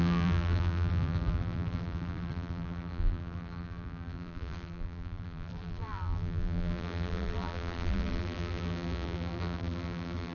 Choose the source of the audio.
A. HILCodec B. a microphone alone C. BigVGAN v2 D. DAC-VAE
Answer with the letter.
C